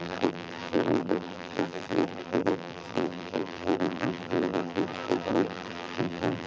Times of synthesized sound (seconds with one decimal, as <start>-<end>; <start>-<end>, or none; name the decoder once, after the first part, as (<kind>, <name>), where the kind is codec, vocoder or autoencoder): 0.0-6.5 (vocoder, BigVGAN v2)